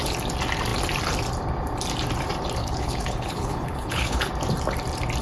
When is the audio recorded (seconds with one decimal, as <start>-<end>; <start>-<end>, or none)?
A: 0.0-2.6; 4.3-5.2